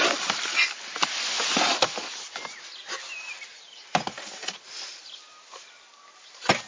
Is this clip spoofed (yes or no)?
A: no